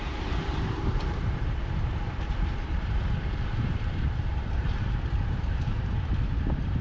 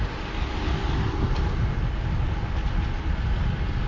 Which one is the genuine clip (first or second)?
second